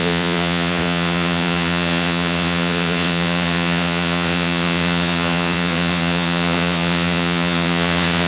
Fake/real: fake